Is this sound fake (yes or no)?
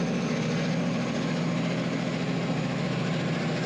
no